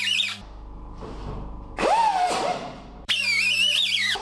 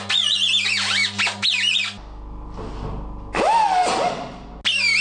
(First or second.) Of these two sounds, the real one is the second